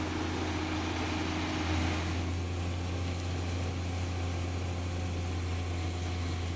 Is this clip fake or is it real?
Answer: real